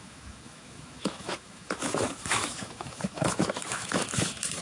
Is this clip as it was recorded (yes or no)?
no